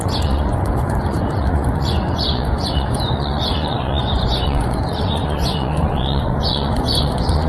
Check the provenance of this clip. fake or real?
fake